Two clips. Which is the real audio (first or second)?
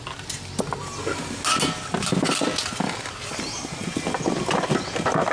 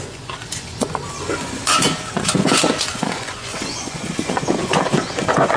first